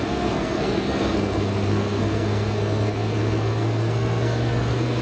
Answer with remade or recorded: remade